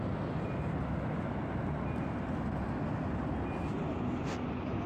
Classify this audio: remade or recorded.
recorded